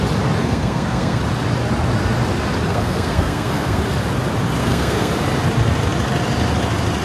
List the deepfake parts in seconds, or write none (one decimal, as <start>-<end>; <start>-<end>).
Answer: 0.4-1.2; 2.7-3.8; 4.6-5.1